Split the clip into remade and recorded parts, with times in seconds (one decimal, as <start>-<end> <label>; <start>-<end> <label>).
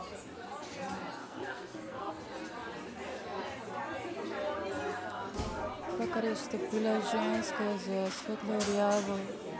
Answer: 0.0-1.2 recorded; 1.2-2.1 remade; 2.1-9.6 recorded